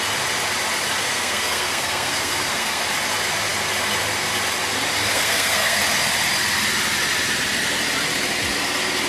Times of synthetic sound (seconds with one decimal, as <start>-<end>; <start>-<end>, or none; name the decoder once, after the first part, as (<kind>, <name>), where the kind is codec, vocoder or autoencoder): 1.0-2.8 (codec, SNAC); 5.1-5.8